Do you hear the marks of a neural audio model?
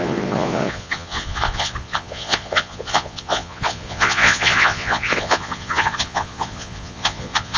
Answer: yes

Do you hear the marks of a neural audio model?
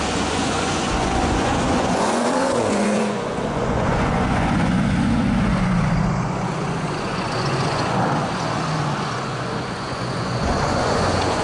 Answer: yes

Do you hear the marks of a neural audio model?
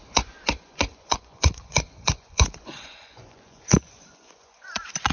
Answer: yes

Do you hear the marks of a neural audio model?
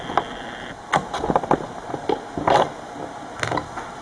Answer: no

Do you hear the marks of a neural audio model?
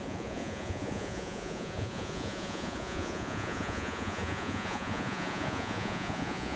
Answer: yes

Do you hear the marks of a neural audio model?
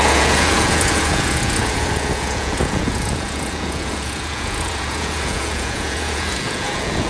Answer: yes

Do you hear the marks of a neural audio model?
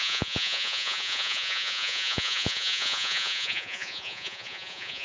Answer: yes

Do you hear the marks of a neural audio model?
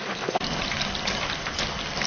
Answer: no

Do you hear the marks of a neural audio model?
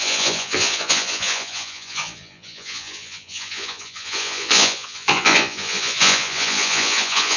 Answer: yes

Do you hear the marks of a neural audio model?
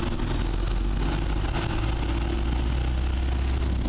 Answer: no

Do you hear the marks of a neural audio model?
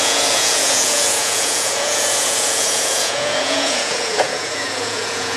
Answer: yes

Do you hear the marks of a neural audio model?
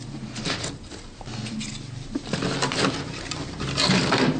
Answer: no